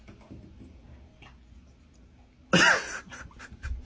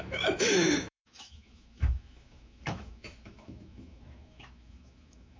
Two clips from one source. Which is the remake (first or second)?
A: second